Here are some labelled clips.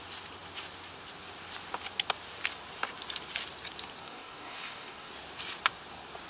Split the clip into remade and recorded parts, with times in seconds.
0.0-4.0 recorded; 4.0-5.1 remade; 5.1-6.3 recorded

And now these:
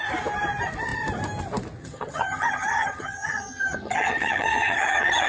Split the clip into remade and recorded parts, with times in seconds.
0.0-1.8 recorded; 1.8-5.3 remade

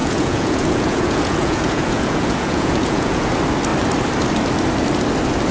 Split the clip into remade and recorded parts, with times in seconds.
0.0-3.3 remade; 3.3-5.5 recorded